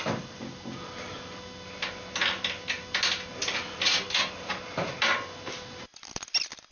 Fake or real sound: real